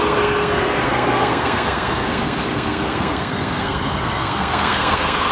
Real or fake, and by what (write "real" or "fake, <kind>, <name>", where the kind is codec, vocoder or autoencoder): fake, codec, SNAC